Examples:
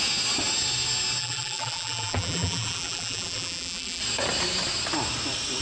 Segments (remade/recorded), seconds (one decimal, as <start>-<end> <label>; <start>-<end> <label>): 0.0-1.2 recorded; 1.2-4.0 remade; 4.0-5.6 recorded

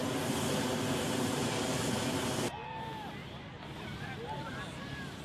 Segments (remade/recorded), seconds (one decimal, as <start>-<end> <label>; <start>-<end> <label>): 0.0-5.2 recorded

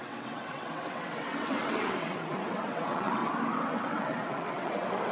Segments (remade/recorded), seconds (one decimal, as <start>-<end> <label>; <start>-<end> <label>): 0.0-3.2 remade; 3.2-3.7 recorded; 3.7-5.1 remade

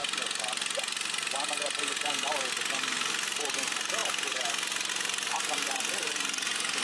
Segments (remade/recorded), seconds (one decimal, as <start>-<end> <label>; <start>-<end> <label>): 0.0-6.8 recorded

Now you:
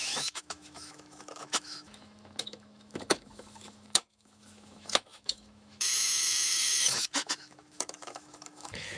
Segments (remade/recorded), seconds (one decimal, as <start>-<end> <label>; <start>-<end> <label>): 0.0-9.0 remade

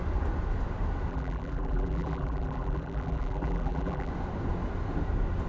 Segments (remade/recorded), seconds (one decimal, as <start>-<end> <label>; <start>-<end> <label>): 0.0-1.1 recorded; 1.1-4.1 remade; 4.1-5.5 recorded